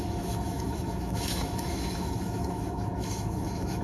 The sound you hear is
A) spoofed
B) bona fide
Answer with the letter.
A